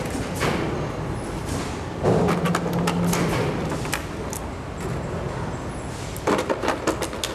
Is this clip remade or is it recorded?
recorded